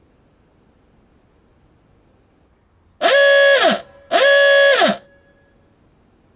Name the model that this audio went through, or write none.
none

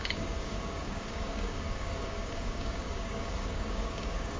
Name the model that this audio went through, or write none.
codec, DAC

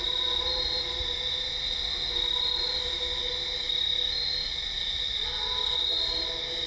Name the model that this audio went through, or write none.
none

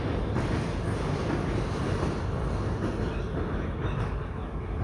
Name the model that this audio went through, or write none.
none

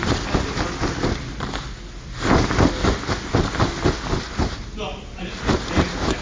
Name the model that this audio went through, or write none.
none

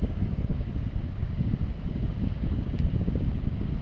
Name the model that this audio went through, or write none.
codec, DAC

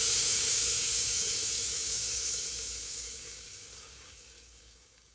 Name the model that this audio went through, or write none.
codec, DAC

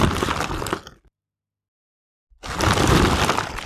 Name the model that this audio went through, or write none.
none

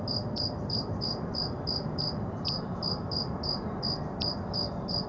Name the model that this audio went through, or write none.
none